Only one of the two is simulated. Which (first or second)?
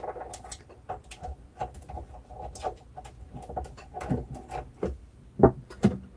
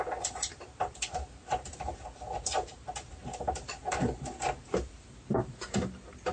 second